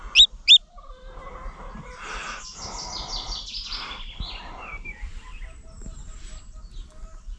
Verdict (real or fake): real